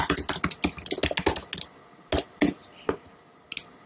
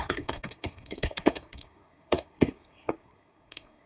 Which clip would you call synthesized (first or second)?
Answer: second